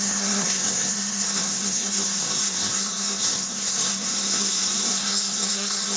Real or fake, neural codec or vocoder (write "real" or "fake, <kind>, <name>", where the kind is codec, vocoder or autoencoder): fake, codec, SNAC